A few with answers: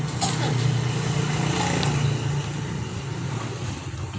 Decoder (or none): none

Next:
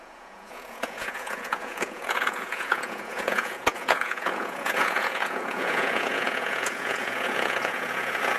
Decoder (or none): vocoder, Vocos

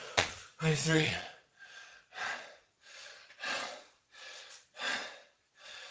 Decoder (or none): vocoder, Vocos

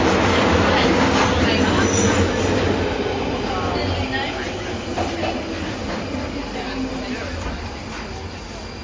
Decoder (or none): none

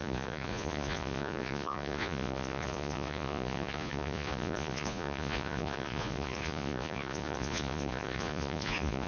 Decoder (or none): vocoder, Vocos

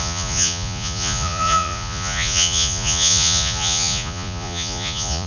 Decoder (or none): vocoder, Vocos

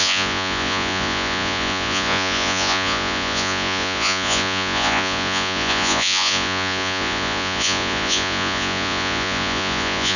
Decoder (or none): vocoder, Vocos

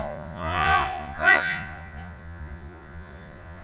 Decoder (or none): vocoder, Vocos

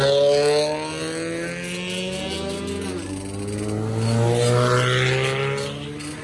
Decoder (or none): none